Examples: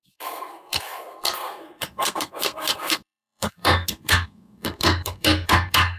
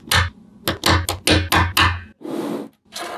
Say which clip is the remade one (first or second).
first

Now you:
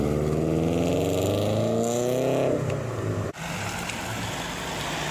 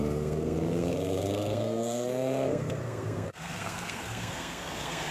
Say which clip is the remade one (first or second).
second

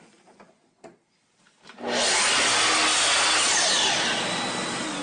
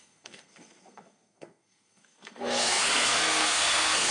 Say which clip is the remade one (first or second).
second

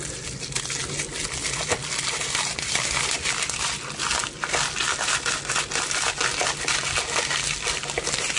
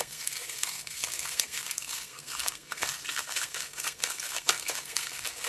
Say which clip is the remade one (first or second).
second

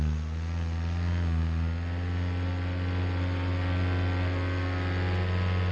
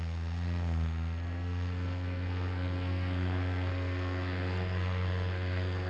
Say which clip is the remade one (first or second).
second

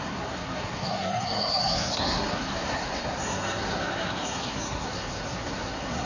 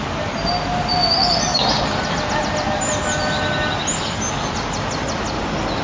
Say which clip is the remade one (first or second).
first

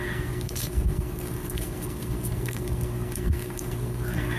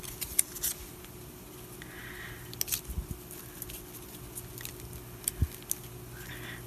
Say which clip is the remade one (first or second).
first